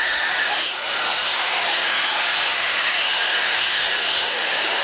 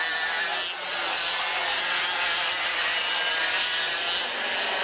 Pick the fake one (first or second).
first